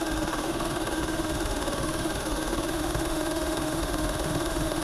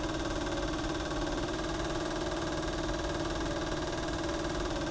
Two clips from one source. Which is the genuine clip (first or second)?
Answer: second